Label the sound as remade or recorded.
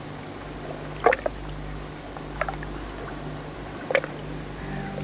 recorded